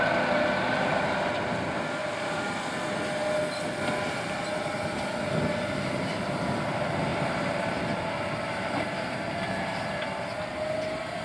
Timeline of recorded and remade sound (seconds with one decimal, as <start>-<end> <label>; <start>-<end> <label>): 0.0-2.0 recorded; 2.0-2.5 remade; 2.5-7.1 recorded; 7.1-9.8 remade; 9.8-11.2 recorded